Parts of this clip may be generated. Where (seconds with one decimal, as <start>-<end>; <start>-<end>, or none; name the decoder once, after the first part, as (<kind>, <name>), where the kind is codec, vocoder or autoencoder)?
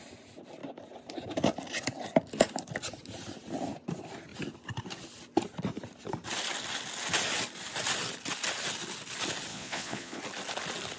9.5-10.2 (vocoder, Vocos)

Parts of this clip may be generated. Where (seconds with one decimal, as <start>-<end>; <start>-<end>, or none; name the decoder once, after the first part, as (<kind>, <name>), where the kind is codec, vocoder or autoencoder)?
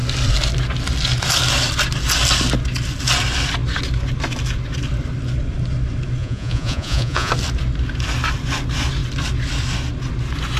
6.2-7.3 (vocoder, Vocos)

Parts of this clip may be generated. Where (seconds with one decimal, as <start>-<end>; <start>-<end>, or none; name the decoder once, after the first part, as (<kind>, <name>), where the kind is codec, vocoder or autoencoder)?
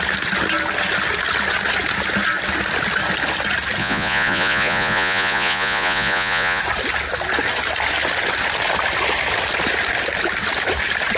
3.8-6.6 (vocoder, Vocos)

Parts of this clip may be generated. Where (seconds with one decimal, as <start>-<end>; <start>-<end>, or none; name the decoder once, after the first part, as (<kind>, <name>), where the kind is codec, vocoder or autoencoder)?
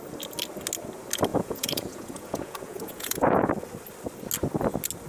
1.3-3.5 (vocoder, Vocos)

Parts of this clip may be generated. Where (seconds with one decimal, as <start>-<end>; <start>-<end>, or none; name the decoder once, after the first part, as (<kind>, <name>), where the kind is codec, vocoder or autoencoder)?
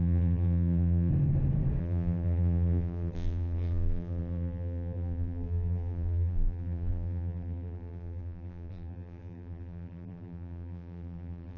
0.0-1.1 (vocoder, BigVGAN v2); 1.8-11.6